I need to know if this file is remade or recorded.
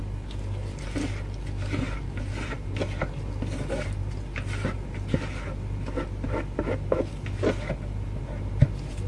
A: recorded